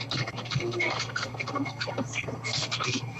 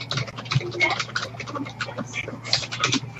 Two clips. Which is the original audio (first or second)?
second